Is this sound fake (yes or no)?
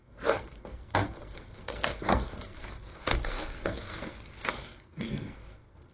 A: yes